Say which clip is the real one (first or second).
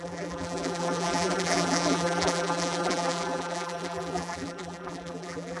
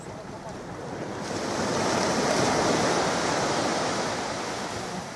second